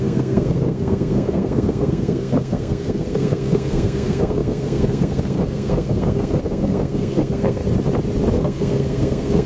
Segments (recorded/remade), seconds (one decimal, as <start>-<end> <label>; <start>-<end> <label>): 0.0-7.6 remade; 7.6-8.3 recorded; 8.3-9.5 remade